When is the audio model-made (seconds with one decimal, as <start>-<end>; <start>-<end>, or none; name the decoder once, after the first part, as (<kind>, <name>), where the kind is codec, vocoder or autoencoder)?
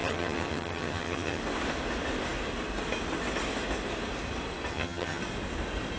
0.0-1.4 (vocoder, HiFi-GAN); 4.7-5.2